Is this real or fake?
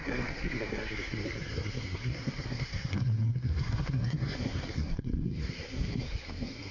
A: fake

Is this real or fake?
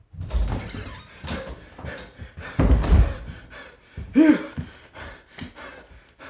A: real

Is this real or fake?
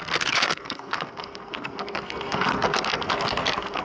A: fake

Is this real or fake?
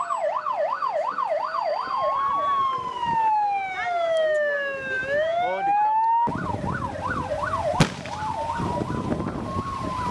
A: real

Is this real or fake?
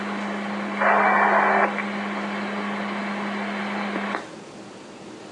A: real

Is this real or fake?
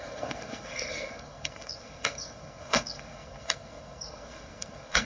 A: fake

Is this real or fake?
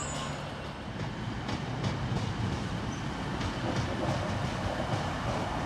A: real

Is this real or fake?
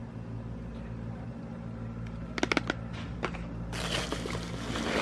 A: real